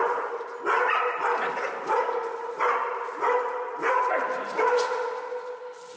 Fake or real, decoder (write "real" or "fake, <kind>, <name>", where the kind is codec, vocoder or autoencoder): real